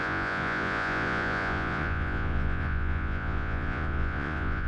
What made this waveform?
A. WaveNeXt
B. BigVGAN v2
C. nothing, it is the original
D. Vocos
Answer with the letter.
D